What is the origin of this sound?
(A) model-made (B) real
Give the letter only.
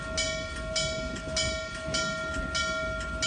B